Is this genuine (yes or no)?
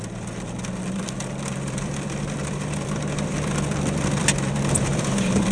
no